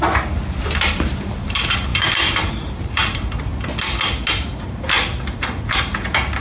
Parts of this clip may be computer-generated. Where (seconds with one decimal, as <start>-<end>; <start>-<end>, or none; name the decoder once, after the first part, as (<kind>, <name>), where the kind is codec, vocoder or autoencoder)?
0.0-3.5 (vocoder, BigVGAN v2); 5.4-6.4